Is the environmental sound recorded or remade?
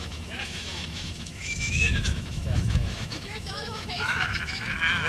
remade